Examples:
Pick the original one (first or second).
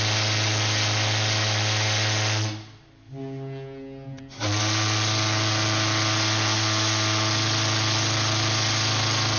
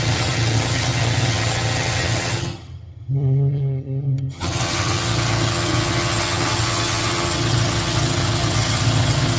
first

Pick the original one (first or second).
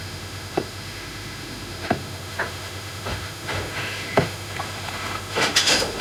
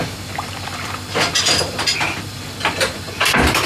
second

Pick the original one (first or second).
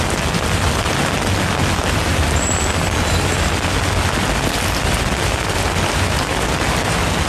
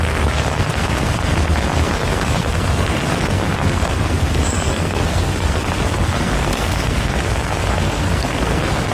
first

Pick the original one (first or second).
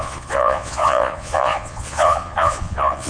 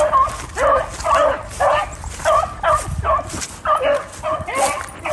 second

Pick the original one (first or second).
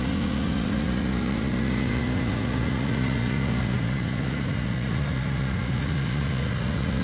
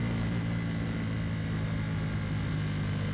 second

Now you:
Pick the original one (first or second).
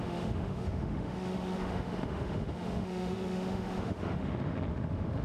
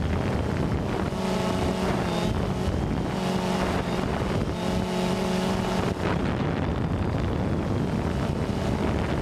second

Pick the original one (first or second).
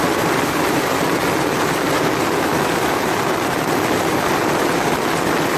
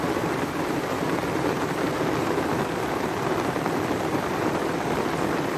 first